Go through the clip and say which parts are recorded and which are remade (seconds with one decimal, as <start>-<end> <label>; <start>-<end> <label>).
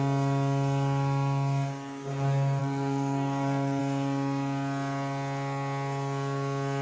0.0-2.6 recorded; 2.6-3.8 remade; 3.8-6.8 recorded